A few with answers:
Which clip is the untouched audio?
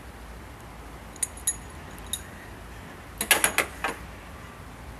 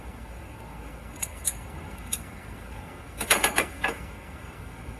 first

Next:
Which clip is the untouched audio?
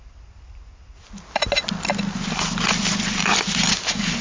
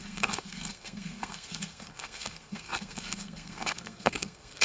first